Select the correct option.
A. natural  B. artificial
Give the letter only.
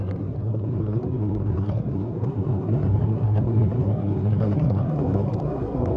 B